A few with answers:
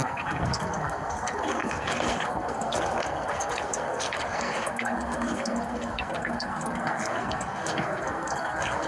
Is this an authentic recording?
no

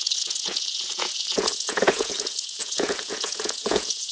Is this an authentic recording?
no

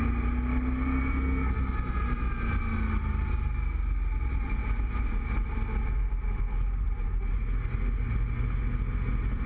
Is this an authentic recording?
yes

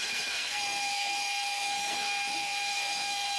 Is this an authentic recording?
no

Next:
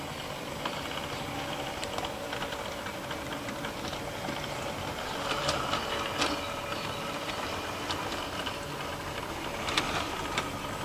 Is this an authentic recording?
no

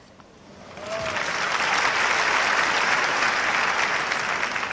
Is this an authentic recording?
yes